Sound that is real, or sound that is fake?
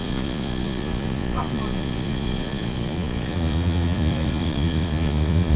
fake